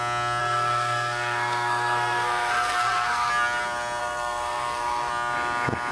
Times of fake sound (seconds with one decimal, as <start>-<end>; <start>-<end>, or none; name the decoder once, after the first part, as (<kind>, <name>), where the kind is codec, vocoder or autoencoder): 0.4-3.3 (codec, SNAC); 4.0-5.1